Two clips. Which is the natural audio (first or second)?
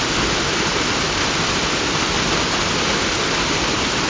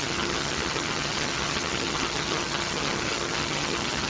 first